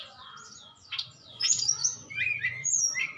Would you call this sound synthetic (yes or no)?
yes